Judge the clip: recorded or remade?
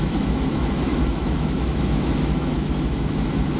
remade